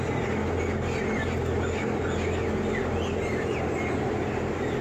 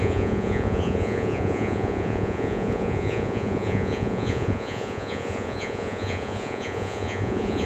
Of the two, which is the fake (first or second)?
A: second